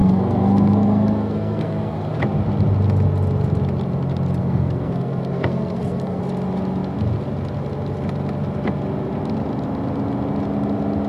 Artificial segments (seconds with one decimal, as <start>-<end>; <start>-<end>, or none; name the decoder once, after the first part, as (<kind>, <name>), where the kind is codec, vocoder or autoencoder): 0.0-2.2 (codec, SNAC); 4.4-6.2